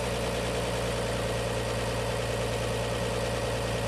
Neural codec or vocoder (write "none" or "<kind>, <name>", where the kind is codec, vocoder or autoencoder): none